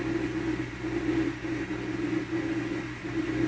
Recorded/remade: recorded